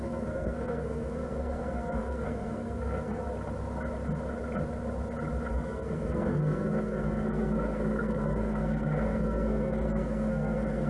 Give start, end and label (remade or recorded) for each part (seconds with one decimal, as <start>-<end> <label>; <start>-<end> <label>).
0.0-3.2 remade; 3.2-5.5 recorded; 5.5-10.9 remade